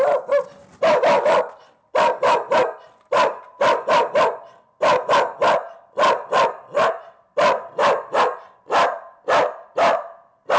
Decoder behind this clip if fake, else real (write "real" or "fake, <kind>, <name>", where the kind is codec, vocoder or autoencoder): real